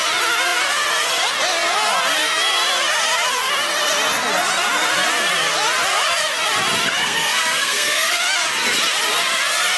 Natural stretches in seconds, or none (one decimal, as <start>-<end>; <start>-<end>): 0.0-7.0; 8.2-9.8